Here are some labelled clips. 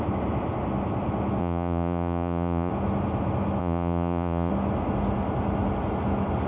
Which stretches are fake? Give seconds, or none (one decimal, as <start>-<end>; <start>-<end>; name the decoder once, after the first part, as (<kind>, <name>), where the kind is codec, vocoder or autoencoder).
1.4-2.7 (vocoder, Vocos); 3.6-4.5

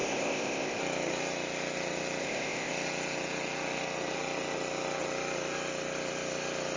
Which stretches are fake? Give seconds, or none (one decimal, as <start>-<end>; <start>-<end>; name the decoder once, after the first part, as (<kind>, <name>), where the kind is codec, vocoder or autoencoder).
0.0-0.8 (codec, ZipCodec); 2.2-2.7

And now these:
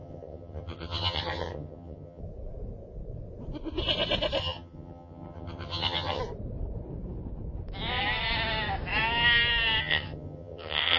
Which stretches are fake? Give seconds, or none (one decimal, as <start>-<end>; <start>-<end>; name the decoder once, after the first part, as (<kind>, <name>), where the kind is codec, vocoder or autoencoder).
0.0-2.2 (vocoder, HiFi-GAN); 4.4-6.2; 9.8-11.0